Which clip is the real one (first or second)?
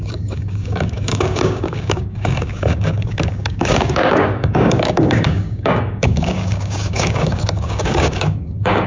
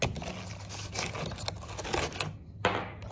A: second